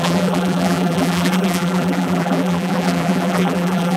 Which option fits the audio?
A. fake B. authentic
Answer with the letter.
A